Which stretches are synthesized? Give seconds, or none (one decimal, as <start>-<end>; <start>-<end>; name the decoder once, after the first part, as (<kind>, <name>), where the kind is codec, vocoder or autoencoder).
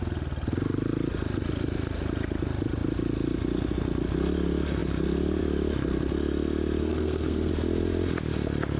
6.8-7.5 (codec, SNAC)